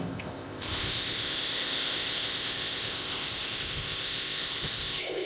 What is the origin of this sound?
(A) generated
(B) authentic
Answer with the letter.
A